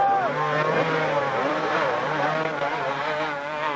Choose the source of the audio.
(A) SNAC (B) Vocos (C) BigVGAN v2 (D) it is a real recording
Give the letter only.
C